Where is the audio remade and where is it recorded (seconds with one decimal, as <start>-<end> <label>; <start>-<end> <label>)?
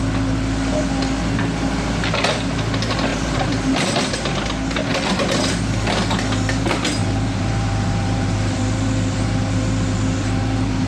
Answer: 0.0-3.1 recorded; 3.1-4.1 remade; 4.1-7.0 recorded; 7.0-10.9 remade